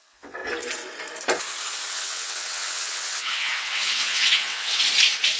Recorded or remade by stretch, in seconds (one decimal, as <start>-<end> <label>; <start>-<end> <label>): 0.0-0.4 remade; 0.4-1.9 recorded; 1.9-4.8 remade; 4.8-5.4 recorded

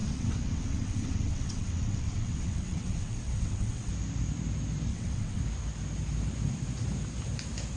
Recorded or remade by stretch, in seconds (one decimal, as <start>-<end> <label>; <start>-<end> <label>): 0.0-3.9 remade; 3.9-4.9 recorded; 4.9-5.4 remade; 5.4-7.8 recorded

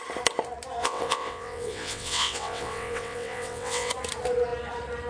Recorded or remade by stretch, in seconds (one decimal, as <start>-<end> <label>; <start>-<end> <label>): 0.0-0.8 recorded; 0.8-3.9 remade; 3.9-5.1 recorded

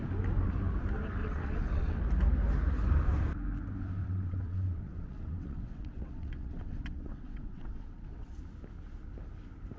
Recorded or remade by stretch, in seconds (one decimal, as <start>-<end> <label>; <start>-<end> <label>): 0.0-1.2 recorded; 1.2-2.0 remade; 2.0-4.0 recorded; 4.0-8.3 remade; 8.3-9.8 recorded